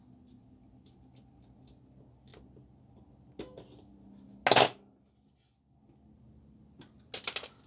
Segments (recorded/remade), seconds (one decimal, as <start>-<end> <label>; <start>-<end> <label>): 0.0-7.7 recorded